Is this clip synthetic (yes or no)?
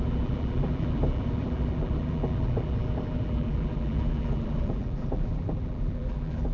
yes